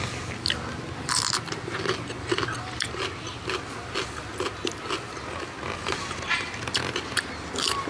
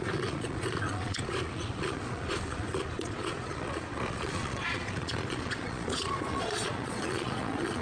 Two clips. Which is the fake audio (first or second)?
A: second